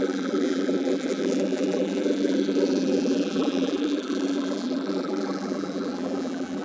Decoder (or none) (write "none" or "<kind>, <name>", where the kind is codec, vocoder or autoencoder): vocoder, BigVGAN v2